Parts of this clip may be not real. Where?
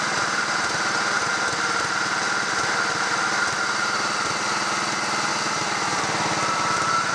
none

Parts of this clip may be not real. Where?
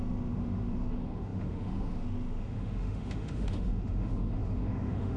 0.0-5.2 (autoencoder, DAC-VAE)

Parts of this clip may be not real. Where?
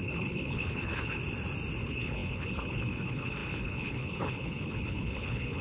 0.0-1.2 (codec, HILCodec); 1.8-5.6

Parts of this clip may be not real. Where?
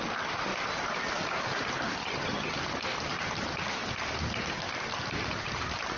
2.0-2.5 (vocoder, HiFi-GAN)